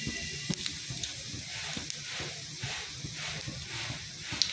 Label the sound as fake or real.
real